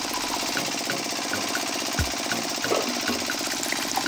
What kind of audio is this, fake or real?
real